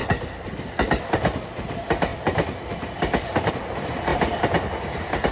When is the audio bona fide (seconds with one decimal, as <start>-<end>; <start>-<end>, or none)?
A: 1.0-2.1; 3.5-4.1; 4.7-5.3